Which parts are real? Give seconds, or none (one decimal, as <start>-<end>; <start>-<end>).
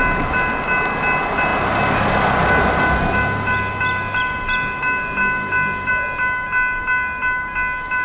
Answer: 0.0-8.0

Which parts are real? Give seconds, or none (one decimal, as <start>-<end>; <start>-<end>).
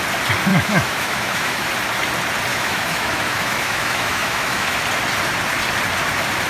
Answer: 0.0-0.5; 1.7-2.5; 4.8-6.5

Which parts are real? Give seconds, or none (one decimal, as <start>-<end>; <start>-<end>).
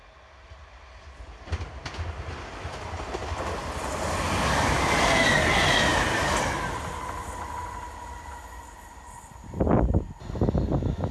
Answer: 0.0-11.1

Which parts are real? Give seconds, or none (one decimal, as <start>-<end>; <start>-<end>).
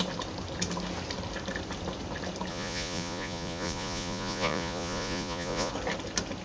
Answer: 0.0-2.5; 5.7-6.4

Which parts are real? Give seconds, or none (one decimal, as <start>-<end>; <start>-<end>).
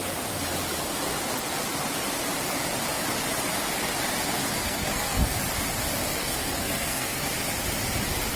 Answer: 0.0-4.4; 5.4-6.2; 7.3-8.4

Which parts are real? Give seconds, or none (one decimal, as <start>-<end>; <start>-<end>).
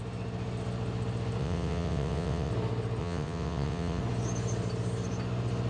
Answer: 0.0-1.4; 2.5-3.0; 4.0-5.7